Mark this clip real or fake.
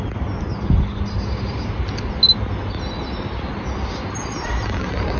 real